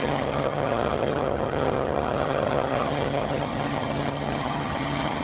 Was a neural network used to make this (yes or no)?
yes